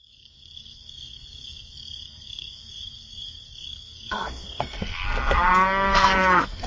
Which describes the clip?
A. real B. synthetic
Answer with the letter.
B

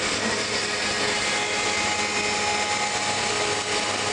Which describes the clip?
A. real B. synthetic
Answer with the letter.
A